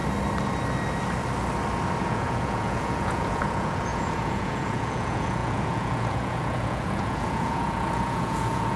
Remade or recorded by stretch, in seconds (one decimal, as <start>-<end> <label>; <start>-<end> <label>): 0.0-2.0 recorded; 2.0-8.8 remade